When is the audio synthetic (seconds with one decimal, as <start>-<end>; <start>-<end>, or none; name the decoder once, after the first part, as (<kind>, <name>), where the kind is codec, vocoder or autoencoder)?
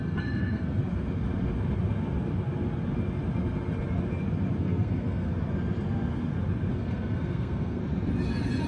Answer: 0.0-0.8 (codec, SNAC); 4.6-5.3; 6.7-7.8